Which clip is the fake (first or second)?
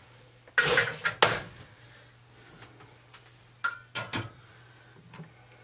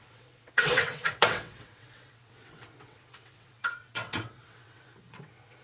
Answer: second